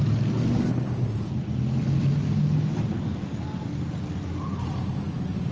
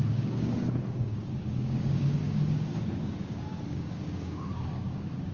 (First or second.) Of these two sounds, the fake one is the second